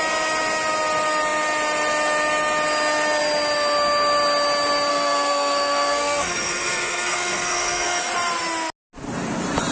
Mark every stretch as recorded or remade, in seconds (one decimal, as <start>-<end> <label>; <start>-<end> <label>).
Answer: 0.0-4.9 recorded; 4.9-8.0 remade; 8.0-9.7 recorded